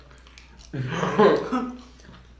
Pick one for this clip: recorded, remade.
recorded